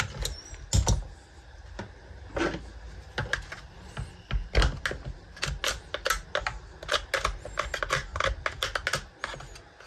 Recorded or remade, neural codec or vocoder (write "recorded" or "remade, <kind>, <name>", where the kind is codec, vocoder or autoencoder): recorded